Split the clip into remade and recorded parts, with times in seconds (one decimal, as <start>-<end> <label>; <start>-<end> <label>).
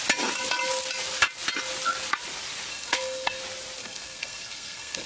0.0-2.7 recorded; 2.7-3.4 remade; 3.4-3.8 recorded; 3.8-5.1 remade